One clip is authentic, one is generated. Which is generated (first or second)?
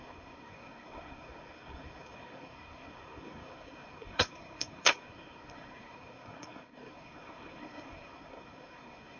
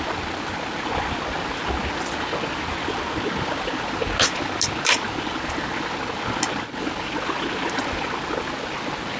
first